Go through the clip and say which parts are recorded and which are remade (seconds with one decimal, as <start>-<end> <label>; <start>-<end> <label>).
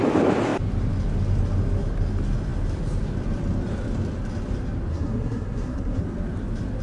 0.0-4.9 recorded; 4.9-6.0 remade; 6.0-6.8 recorded